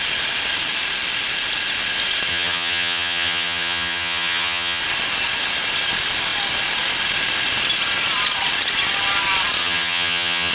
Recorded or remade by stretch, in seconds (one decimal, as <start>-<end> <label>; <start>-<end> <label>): 0.0-2.3 recorded; 2.3-4.8 remade; 4.8-9.6 recorded; 9.6-10.5 remade